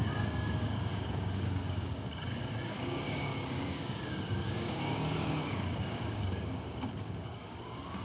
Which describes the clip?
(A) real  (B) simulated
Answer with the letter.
B